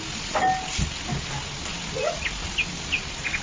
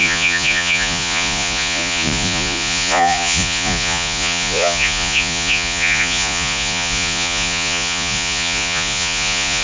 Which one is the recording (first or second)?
first